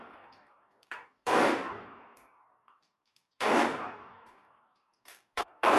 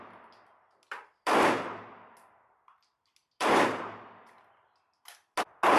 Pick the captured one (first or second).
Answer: second